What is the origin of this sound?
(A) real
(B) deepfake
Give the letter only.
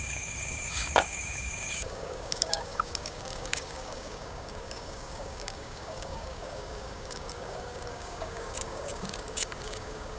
B